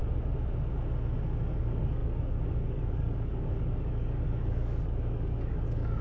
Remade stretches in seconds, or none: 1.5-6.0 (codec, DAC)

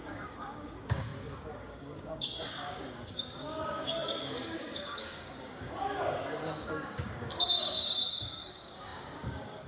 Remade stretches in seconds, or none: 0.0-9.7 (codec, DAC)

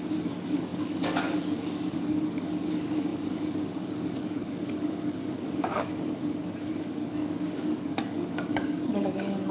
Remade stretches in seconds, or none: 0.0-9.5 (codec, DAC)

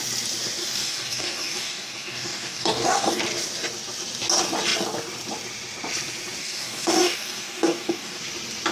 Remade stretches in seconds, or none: 0.6-3.2 (codec, DAC); 6.4-8.2

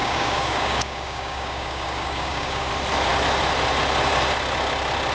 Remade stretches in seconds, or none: 0.0-2.7 (codec, DAC)